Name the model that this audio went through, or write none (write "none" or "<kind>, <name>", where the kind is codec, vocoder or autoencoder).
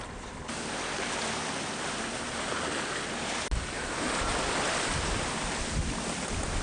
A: none